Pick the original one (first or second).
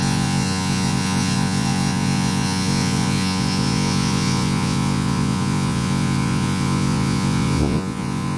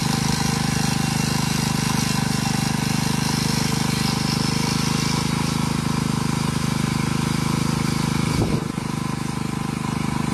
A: second